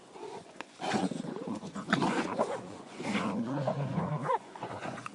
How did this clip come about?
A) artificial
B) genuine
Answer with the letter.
A